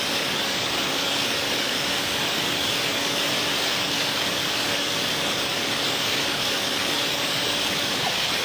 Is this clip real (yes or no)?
no